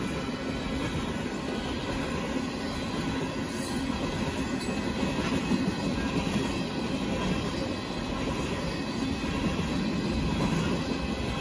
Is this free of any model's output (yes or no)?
yes